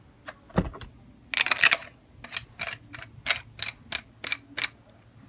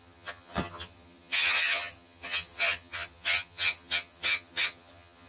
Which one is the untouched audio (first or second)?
first